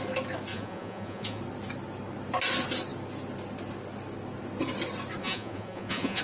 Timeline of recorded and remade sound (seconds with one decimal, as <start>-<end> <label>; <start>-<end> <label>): 0.0-0.5 recorded; 0.5-1.4 remade; 1.4-5.2 recorded; 5.2-6.2 remade

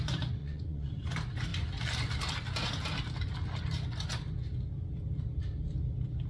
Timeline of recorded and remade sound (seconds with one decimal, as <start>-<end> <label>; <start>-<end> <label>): 0.0-0.4 recorded; 0.4-0.9 remade; 0.9-6.3 recorded

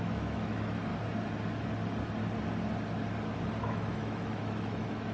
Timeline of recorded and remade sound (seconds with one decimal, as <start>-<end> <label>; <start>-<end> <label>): 0.0-0.9 remade; 0.9-3.6 recorded; 3.6-5.1 remade

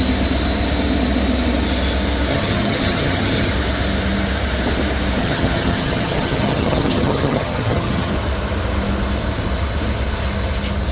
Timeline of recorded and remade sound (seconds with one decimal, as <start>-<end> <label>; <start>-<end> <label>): 0.0-2.3 recorded; 2.3-3.5 remade; 3.5-5.2 recorded; 5.2-8.1 remade; 8.1-10.9 recorded

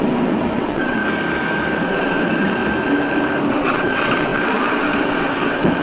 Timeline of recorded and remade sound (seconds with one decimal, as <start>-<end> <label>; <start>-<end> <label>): 0.0-1.0 remade; 1.0-1.8 recorded; 1.8-2.6 remade; 2.6-3.5 recorded; 3.5-5.8 remade

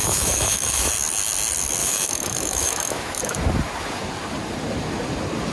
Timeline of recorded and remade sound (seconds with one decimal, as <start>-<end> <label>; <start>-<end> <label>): 0.0-0.9 remade; 0.9-1.8 recorded; 1.8-3.2 remade; 3.2-5.5 recorded

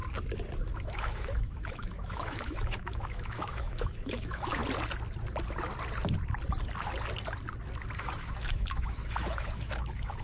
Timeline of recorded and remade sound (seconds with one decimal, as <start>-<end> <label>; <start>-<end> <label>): 0.0-0.7 recorded; 0.7-4.6 remade; 4.6-8.0 recorded; 8.0-10.2 remade